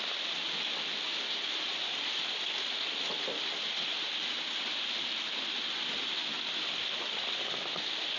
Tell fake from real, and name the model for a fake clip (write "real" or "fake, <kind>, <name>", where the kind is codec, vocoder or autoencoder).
real